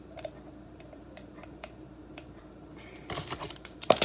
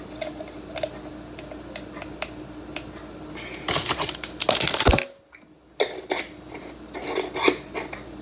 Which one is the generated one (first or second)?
first